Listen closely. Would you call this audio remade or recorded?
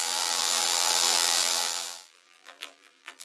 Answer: remade